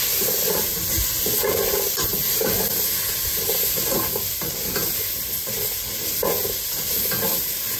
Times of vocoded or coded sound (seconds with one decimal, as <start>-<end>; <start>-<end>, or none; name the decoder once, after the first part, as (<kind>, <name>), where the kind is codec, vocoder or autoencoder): none